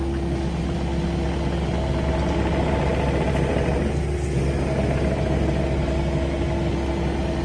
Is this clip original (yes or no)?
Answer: yes